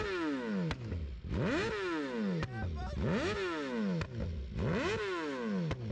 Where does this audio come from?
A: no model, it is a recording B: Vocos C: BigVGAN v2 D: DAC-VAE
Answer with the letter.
A